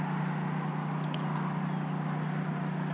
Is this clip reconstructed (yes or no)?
no